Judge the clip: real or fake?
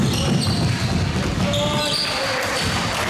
real